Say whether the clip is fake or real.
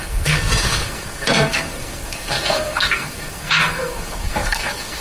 fake